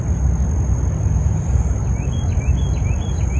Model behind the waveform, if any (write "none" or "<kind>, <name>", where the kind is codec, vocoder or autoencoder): none